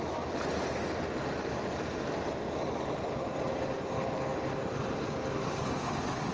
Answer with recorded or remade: recorded